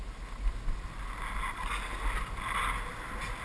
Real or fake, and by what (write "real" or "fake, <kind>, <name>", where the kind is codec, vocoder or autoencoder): real